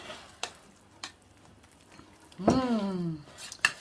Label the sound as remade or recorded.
recorded